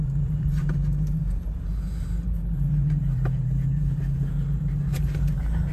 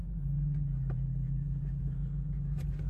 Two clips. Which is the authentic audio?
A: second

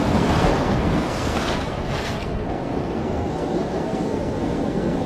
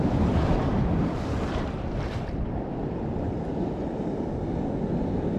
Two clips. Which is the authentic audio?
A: second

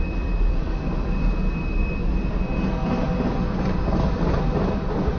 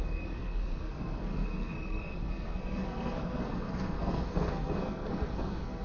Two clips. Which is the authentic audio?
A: first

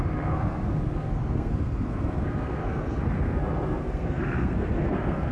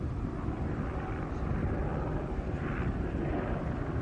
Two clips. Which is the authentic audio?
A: second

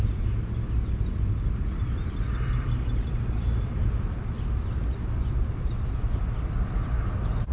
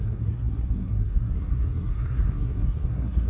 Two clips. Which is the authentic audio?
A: first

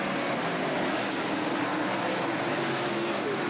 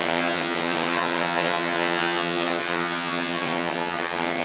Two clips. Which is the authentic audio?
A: first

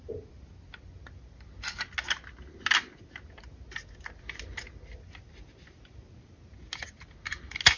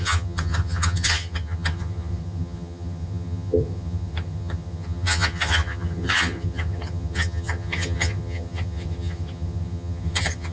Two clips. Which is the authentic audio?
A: first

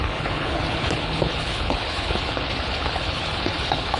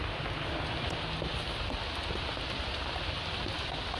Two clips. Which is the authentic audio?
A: second